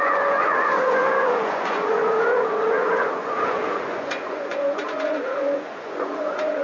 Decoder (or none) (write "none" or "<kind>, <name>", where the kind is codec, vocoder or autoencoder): vocoder, Vocos